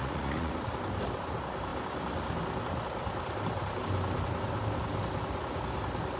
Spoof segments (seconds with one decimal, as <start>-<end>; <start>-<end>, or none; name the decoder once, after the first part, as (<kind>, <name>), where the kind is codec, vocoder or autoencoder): 0.0-0.7 (vocoder, Vocos)